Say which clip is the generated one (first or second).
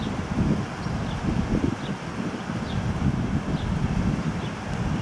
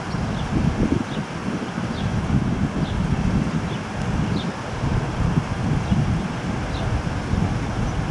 first